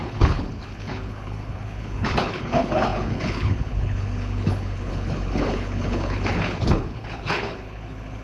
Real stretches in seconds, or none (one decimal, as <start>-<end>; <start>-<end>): none